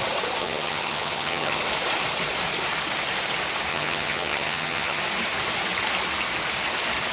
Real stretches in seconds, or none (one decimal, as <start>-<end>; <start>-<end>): 0.0-0.4; 1.6-3.7; 5.0-7.1